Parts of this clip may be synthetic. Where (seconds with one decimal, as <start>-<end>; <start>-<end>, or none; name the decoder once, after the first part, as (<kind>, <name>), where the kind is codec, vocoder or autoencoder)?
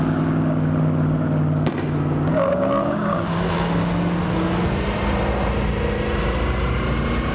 2.3-3.4 (codec, DAC)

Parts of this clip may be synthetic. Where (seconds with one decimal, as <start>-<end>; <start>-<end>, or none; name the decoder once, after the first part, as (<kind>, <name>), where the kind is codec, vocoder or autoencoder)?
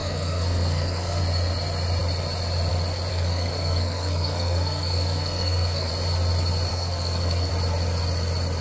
0.0-1.2 (codec, SNAC); 3.1-5.9; 6.7-7.5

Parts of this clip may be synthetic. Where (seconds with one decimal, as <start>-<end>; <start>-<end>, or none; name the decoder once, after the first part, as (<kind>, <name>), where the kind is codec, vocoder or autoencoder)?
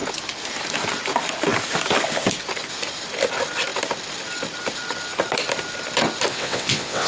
6.3-7.1 (vocoder, WaveNeXt)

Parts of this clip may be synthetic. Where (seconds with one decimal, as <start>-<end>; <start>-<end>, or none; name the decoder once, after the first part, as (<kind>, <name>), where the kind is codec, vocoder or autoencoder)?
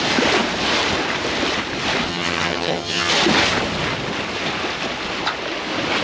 2.1-3.1 (vocoder, HiFi-GAN)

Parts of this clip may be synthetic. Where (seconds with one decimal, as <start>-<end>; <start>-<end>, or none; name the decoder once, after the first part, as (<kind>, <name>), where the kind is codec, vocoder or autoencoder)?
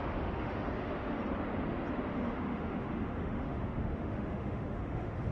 0.0-1.2 (autoencoder, DAC-VAE); 2.1-5.3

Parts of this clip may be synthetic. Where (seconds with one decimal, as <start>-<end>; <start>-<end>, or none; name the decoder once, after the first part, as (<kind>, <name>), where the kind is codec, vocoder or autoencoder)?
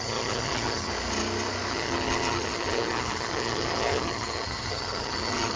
0.0-0.9 (vocoder, HiFi-GAN); 1.7-5.6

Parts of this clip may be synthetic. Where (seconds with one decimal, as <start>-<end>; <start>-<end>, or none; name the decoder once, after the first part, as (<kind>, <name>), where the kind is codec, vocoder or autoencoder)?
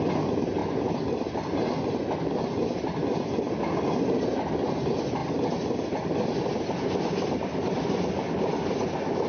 none